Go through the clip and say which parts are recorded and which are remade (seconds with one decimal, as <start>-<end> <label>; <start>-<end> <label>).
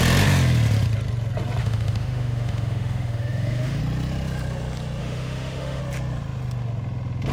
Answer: 0.0-1.6 recorded; 1.6-3.8 remade; 3.8-5.0 recorded; 5.0-5.8 remade; 5.8-7.3 recorded